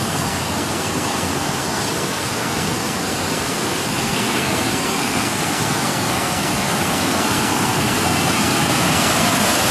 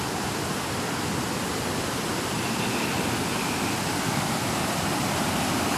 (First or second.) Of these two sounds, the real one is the second